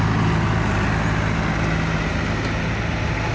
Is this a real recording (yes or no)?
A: yes